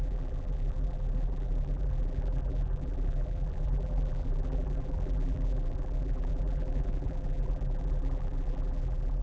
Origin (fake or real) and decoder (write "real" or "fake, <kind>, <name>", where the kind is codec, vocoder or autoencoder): fake, vocoder, BigVGAN v2